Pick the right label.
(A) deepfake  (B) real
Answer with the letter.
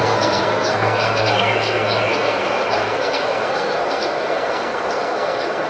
A